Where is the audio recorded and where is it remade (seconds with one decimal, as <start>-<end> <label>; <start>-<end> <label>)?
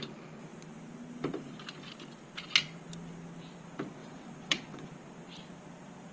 0.0-4.0 recorded; 4.0-4.9 remade; 4.9-6.1 recorded